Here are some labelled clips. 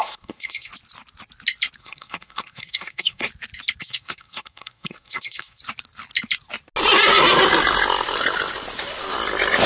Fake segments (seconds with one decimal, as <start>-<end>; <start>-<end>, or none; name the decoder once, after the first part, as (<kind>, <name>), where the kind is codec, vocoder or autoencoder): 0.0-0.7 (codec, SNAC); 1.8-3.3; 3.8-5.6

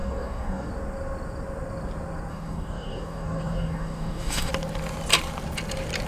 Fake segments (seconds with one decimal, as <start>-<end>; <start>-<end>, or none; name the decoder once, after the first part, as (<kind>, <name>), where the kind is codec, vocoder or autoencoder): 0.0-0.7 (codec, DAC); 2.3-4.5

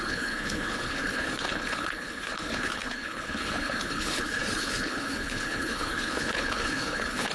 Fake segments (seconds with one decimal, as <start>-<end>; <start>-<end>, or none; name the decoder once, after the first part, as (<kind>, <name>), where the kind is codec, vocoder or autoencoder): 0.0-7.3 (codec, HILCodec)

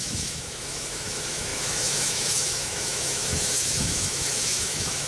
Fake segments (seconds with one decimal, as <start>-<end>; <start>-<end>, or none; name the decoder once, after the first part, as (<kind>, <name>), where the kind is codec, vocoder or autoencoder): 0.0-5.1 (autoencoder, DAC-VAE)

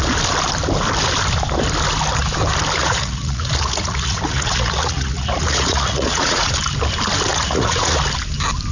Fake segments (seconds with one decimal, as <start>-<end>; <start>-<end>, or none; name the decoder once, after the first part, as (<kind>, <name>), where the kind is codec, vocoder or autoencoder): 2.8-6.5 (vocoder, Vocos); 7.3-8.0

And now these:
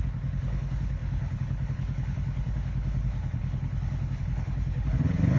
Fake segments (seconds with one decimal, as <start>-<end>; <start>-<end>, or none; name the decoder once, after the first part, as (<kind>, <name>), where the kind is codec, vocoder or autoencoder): 0.0-5.4 (codec, HILCodec)

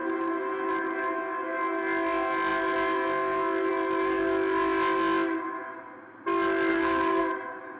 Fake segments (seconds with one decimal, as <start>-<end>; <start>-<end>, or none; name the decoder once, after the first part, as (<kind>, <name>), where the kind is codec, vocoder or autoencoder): 6.7-7.2 (codec, SNAC)